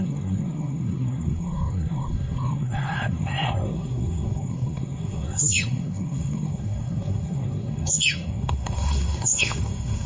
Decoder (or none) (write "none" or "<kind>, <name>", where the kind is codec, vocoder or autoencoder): codec, SNAC